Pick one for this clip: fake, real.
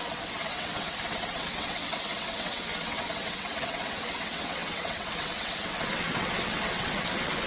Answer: fake